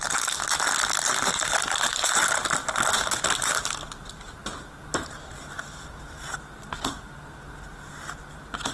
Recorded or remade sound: recorded